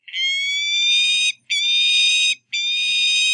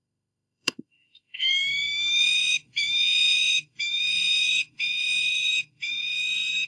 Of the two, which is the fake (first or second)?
second